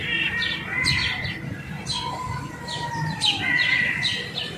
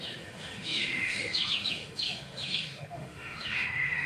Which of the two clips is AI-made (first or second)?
second